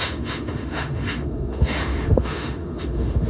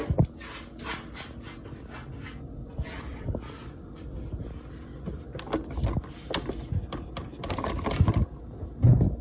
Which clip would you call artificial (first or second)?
first